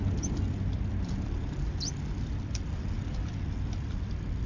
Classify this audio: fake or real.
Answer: fake